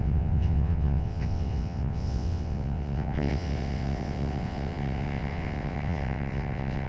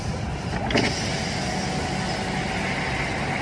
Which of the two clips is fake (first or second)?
first